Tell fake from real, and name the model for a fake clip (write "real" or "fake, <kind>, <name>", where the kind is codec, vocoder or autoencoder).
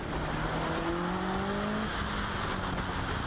real